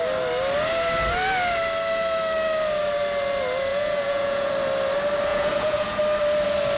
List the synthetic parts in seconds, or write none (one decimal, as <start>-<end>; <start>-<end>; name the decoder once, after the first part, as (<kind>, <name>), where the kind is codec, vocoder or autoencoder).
3.7-4.5 (vocoder, Vocos); 5.3-6.0